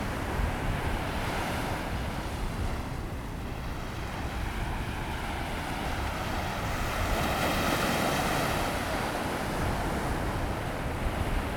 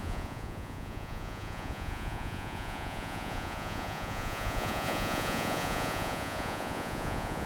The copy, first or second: second